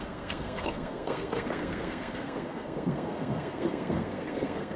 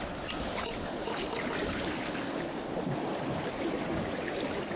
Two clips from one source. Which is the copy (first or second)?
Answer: first